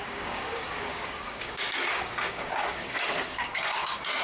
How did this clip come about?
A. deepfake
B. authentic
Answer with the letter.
A